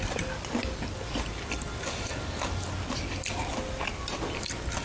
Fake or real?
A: real